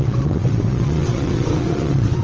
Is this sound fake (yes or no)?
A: yes